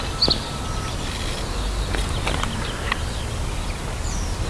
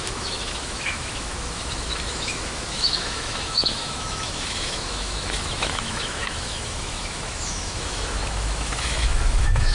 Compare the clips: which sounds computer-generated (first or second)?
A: second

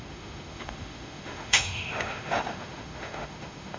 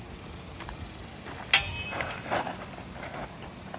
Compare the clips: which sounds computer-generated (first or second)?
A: first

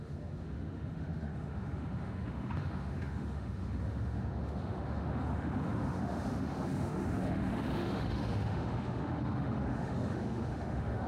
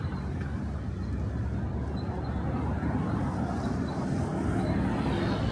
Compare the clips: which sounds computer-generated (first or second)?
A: first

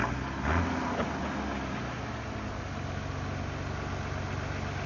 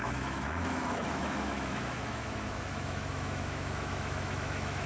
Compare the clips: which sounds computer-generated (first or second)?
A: second